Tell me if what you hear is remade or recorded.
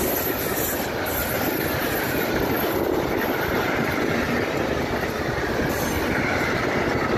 recorded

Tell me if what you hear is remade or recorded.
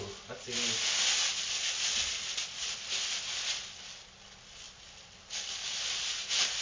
recorded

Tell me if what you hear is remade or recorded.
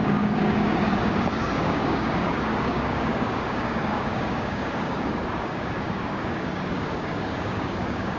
remade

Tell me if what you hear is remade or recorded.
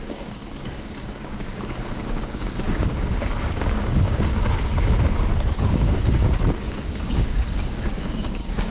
remade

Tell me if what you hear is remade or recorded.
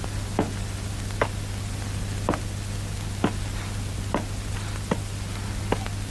recorded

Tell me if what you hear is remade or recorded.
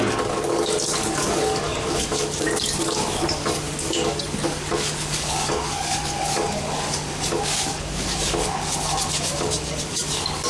remade